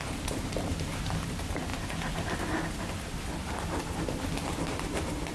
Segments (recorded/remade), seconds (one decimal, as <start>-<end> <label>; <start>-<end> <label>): 0.0-1.7 remade; 1.7-5.3 recorded